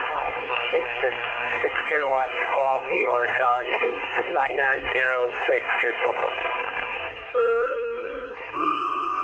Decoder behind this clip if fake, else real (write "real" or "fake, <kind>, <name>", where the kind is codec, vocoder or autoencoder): fake, codec, SNAC